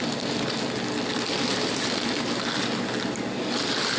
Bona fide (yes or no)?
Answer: yes